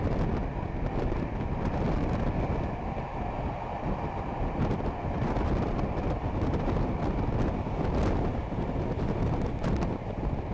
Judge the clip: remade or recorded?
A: recorded